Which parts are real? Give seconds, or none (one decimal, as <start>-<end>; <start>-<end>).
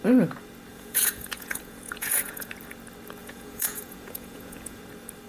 0.0-0.7; 2.5-3.2; 4.8-5.3